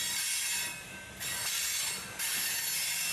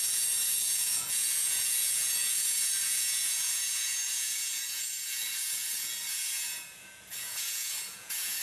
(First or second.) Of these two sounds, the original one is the first